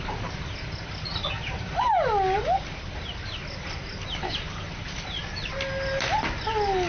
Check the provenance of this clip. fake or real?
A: real